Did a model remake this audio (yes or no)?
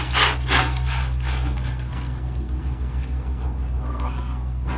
yes